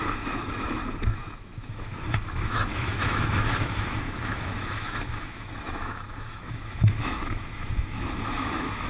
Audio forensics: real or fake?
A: fake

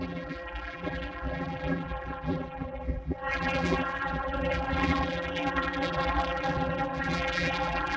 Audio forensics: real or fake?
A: fake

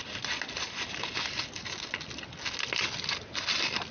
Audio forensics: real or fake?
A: real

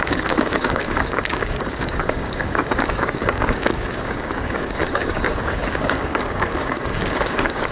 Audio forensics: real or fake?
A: fake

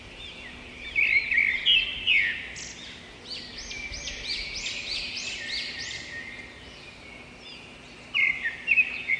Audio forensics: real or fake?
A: real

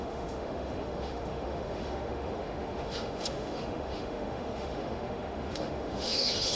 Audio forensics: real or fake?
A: fake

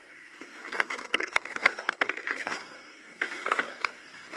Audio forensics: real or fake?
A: fake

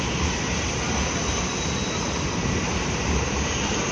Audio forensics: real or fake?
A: fake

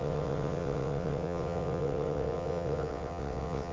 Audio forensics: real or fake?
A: fake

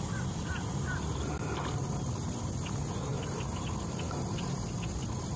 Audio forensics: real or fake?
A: real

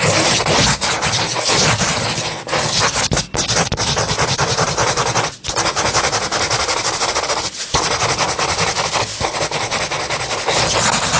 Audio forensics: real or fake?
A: real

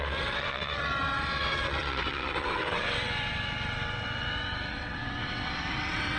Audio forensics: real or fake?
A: fake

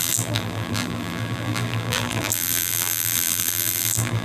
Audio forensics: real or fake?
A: fake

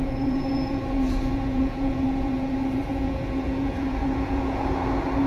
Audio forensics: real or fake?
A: fake